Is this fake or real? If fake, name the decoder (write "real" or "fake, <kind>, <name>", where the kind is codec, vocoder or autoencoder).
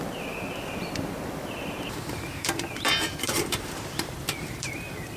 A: fake, vocoder, BigVGAN v2